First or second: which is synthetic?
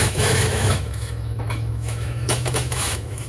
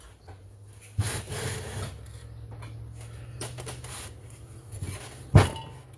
first